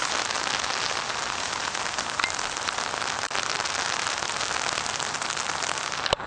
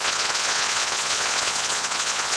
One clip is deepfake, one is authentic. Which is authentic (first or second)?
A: first